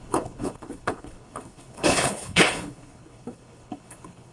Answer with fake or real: fake